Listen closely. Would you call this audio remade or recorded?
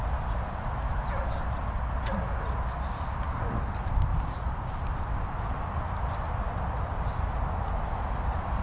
recorded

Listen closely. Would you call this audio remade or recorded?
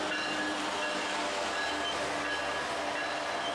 recorded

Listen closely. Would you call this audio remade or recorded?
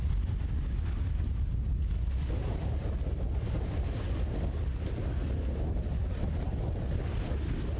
recorded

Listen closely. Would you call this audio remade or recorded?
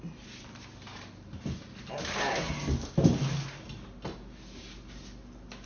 recorded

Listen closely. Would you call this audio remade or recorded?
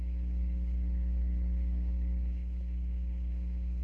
remade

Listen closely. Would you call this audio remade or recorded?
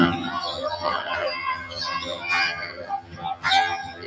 remade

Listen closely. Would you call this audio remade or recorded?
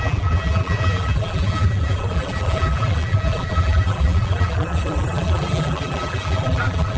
remade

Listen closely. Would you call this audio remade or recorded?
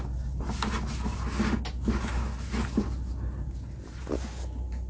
recorded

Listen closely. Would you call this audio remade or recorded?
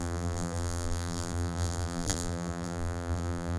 remade